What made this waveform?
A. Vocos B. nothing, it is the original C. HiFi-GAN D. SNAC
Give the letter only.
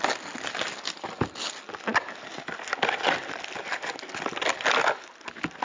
B